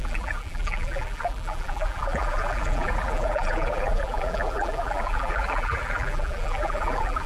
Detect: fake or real fake